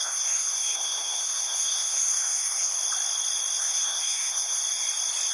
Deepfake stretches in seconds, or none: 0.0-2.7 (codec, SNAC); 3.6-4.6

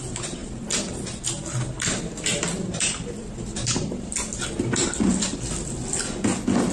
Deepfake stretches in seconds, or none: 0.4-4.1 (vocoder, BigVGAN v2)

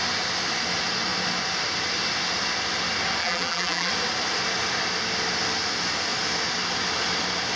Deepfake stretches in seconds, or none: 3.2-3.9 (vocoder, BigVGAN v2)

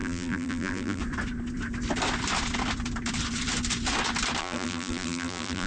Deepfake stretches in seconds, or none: 0.0-1.0 (vocoder, BigVGAN v2); 4.4-5.7